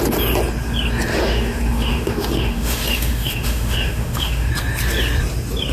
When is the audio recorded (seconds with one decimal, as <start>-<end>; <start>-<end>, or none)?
0.0-1.1; 4.5-5.7